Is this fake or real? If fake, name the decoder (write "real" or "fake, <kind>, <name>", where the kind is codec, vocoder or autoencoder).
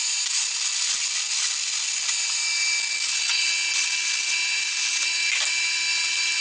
real